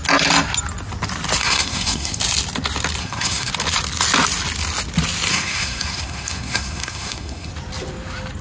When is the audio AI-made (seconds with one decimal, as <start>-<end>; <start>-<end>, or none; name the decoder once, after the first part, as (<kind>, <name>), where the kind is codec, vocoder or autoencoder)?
1.4-2.2 (codec, SNAC); 3.0-3.5; 5.3-7.5